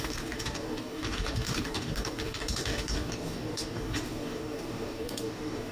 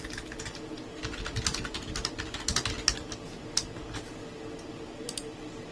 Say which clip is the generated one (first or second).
first